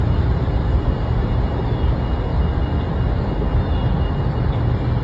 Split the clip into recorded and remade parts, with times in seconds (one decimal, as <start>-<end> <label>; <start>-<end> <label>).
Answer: 0.0-2.3 recorded; 2.3-3.1 remade; 3.1-5.0 recorded